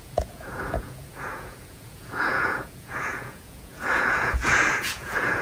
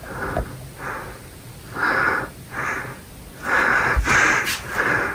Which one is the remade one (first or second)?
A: first